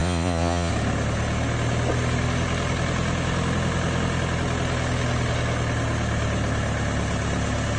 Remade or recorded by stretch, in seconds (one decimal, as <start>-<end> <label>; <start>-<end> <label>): 0.0-0.7 remade; 0.7-7.8 recorded